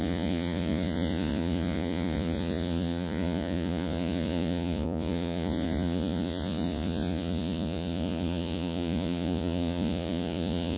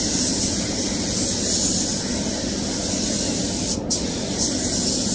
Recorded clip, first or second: second